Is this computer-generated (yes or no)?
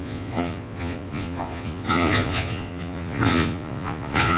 yes